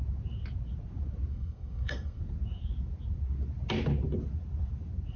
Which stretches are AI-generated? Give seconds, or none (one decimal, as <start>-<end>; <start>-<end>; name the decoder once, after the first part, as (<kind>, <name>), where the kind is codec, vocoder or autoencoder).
1.3-2.2 (codec, SNAC)